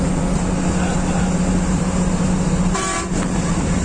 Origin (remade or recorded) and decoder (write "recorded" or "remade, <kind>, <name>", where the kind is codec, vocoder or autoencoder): recorded